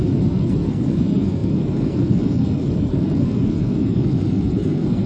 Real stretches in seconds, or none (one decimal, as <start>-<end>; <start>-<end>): none